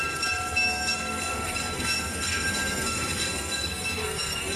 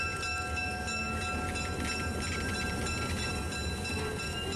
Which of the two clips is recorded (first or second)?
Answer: second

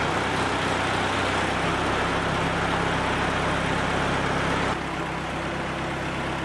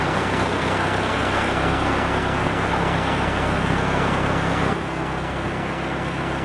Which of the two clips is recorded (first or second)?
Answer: first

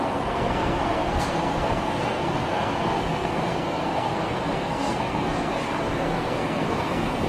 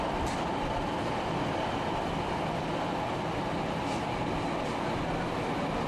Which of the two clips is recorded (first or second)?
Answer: second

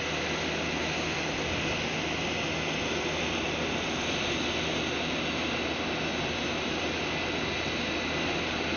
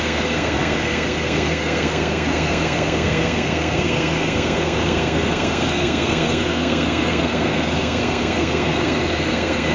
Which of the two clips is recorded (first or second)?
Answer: first